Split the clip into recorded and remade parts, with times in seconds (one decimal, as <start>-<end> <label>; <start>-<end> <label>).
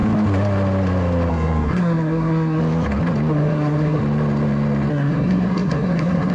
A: 0.0-1.3 recorded; 1.3-2.6 remade; 2.6-3.3 recorded; 3.3-4.0 remade; 4.0-4.9 recorded; 4.9-6.3 remade